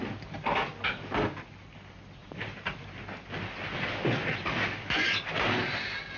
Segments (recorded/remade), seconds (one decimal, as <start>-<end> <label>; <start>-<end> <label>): 0.0-6.2 recorded